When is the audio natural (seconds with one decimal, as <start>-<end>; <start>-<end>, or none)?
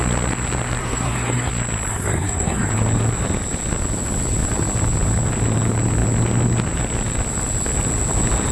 0.0-0.8; 1.5-1.9; 2.7-8.5